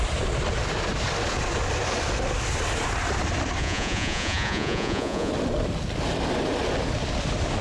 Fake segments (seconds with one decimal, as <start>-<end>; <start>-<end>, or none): 3.6-5.3